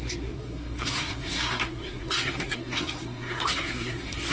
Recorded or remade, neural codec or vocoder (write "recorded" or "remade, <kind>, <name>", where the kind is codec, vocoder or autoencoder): remade, codec, SNAC